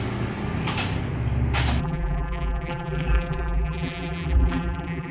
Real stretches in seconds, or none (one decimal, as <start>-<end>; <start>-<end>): 0.0-1.8